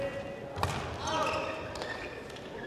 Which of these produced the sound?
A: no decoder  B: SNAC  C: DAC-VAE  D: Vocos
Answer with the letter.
A